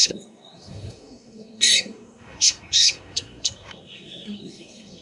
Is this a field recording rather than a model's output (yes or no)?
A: no